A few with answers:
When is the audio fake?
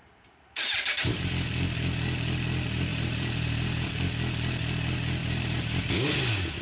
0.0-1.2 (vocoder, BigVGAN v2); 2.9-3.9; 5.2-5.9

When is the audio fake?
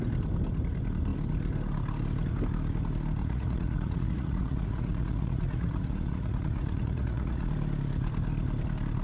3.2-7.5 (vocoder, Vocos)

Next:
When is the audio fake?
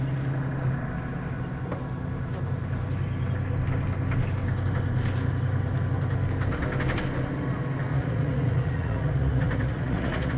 7.9-10.4 (vocoder, Vocos)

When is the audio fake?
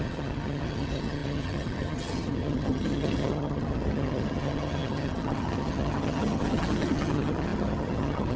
0.0-8.4 (vocoder, HiFi-GAN)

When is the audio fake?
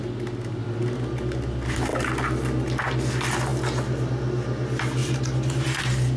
5.0-5.8 (vocoder, BigVGAN v2)